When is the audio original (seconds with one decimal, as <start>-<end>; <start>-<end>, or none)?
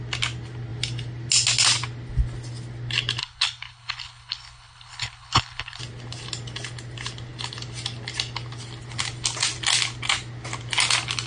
0.0-3.2; 5.8-11.3